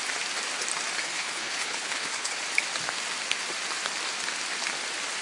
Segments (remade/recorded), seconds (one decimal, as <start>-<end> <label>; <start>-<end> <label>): 0.0-1.0 recorded; 1.0-2.4 remade; 2.4-5.2 recorded